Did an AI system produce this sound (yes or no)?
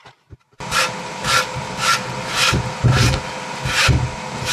no